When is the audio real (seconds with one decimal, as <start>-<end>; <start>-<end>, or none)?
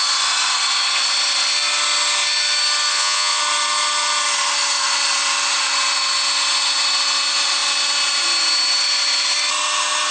0.0-2.9; 3.4-10.1